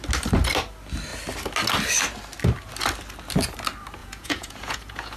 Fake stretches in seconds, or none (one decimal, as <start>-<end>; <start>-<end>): 4.0-5.2

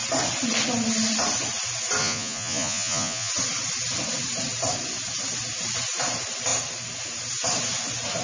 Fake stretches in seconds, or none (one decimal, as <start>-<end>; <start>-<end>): 2.0-3.3

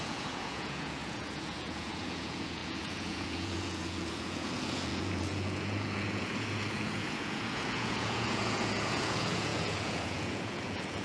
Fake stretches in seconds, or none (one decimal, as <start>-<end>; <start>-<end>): 0.0-11.0

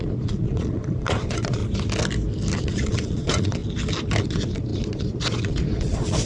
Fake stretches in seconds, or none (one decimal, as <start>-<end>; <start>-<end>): 0.0-1.6; 2.6-3.6; 4.2-6.3

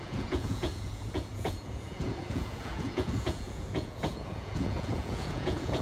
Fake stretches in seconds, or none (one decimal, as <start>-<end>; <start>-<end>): 0.0-5.8

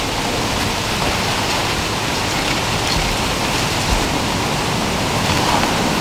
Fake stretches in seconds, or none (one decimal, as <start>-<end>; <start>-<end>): none